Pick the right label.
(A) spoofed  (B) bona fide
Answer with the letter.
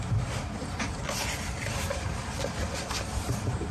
A